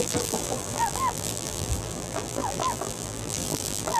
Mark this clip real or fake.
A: fake